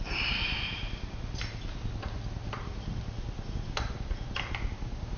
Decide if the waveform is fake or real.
real